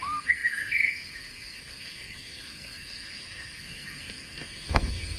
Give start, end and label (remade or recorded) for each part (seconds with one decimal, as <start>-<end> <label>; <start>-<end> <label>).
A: 0.0-5.2 remade